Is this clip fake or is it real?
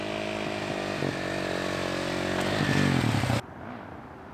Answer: real